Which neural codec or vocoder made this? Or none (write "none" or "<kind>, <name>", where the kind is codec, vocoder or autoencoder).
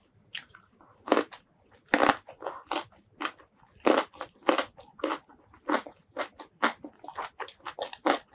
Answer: none